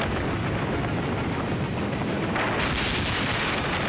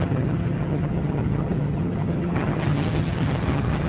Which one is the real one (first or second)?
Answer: first